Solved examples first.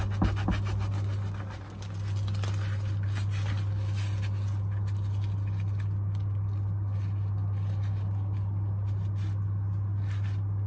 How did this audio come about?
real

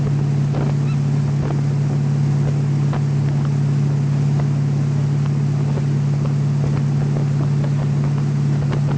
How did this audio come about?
real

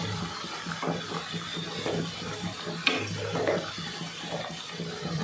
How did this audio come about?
real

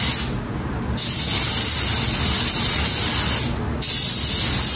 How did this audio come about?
real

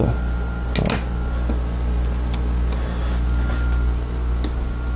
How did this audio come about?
real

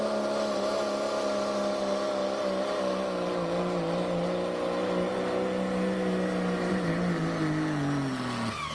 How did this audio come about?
real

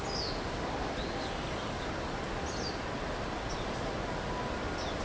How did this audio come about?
real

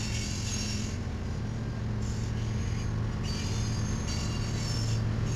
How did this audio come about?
real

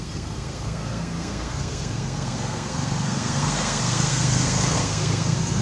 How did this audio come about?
fake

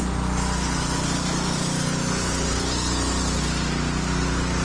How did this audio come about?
real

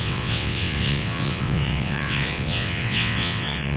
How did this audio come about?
fake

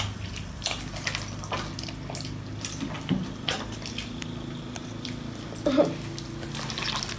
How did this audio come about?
real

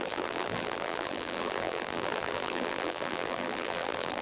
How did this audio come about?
fake